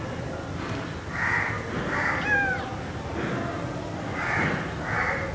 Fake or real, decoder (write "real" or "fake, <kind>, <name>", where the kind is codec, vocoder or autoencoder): real